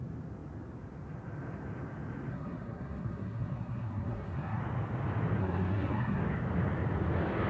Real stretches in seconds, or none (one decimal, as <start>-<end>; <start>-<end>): 0.0-2.3; 4.6-5.4; 6.2-7.5